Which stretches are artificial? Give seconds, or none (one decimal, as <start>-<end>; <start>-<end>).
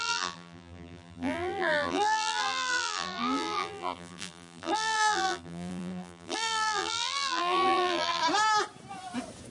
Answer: 0.0-8.2